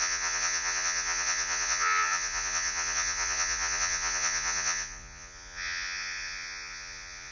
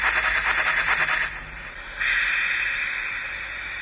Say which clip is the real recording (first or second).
second